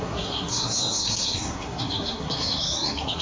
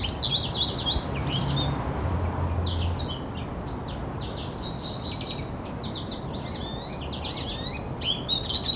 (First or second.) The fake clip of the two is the first